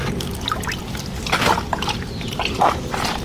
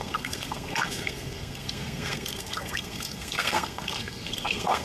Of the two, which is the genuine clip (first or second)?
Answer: first